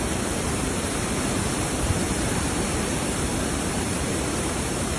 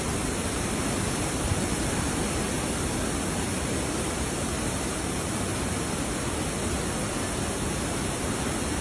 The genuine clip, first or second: second